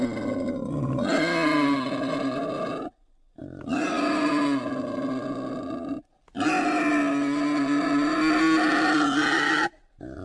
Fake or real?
real